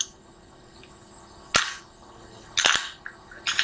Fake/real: real